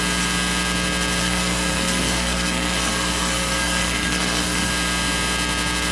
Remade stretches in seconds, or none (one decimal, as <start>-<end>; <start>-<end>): 1.2-4.7